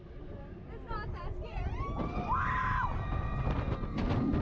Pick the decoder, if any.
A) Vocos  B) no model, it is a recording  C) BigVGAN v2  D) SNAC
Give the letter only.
B